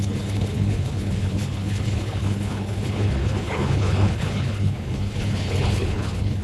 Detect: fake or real fake